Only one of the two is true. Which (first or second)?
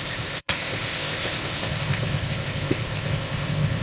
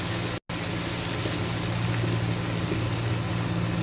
second